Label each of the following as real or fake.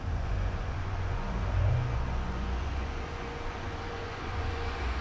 fake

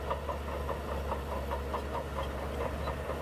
real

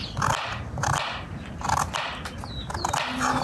real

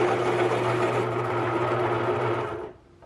real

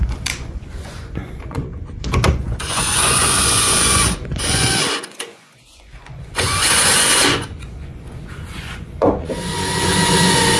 fake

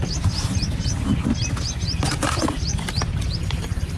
real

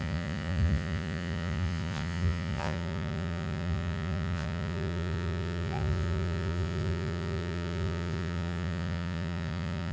fake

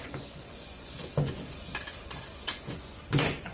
fake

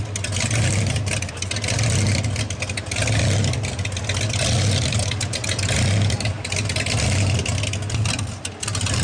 real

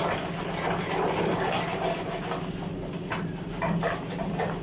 real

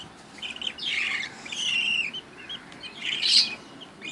real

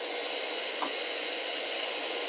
fake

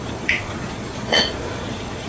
fake